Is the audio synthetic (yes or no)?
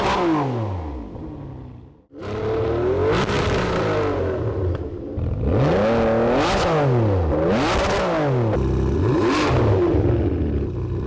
no